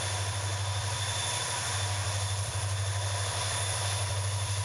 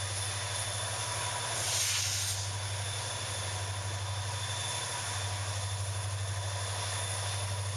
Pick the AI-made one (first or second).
first